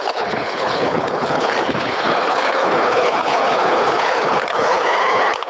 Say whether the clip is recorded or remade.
remade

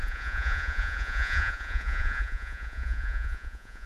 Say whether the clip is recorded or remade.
remade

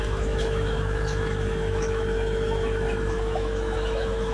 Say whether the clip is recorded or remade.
remade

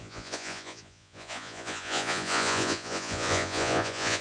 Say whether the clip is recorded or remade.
remade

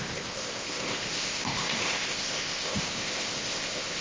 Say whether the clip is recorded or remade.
remade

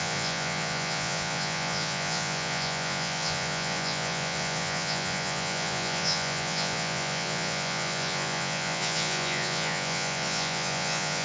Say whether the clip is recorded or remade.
remade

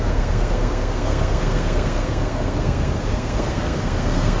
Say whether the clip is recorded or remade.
remade